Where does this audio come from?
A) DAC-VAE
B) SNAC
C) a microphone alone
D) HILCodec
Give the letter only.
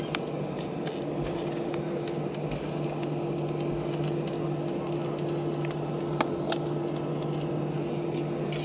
C